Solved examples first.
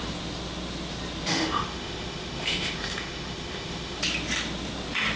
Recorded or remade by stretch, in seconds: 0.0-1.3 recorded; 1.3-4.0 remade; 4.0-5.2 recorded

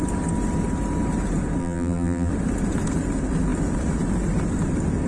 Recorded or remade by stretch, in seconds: 0.0-1.6 recorded; 1.6-2.3 remade; 2.3-5.1 recorded

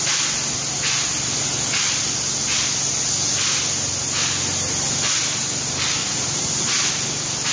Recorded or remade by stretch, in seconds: 0.0-6.0 recorded; 6.0-6.5 remade; 6.5-7.5 recorded

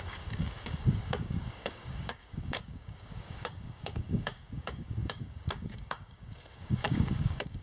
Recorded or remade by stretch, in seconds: 0.0-7.6 remade

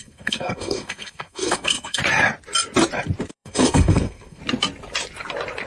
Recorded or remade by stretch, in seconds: 0.0-2.0 remade; 2.0-3.3 recorded; 3.3-4.4 remade; 4.4-5.7 recorded